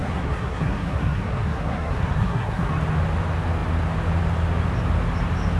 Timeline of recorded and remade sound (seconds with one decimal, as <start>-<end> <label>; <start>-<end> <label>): 0.0-2.7 remade; 2.7-5.6 recorded